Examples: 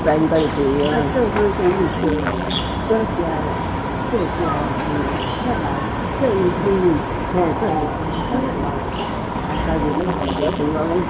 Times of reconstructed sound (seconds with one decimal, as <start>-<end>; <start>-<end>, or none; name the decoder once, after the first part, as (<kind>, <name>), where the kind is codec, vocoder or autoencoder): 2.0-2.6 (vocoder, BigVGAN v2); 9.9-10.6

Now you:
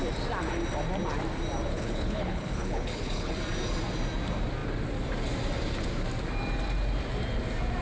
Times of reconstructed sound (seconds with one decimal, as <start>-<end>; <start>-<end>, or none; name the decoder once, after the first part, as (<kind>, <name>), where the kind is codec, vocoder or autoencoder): 1.7-3.3 (codec, HILCodec)

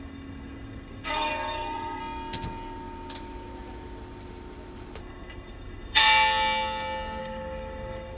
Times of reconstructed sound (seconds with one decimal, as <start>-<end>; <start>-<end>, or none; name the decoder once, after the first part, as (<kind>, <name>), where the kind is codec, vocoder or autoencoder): 0.0-2.0 (codec, SNAC); 5.0-6.0; 7.2-8.2

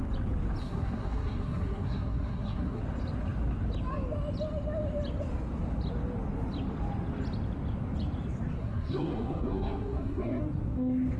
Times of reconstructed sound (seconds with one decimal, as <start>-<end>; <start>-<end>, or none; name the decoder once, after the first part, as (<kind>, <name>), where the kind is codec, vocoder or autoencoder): 0.6-2.8 (codec, SNAC); 8.6-10.4